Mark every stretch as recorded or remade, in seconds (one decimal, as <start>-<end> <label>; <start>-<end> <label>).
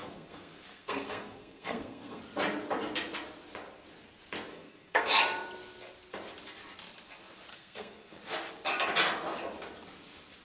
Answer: 0.0-2.2 remade; 2.2-4.5 recorded; 4.5-5.1 remade; 5.1-7.5 recorded; 7.5-8.2 remade; 8.2-10.4 recorded